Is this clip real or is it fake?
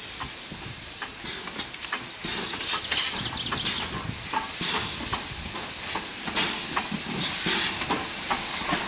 real